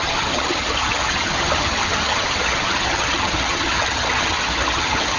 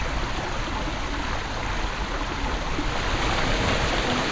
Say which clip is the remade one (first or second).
first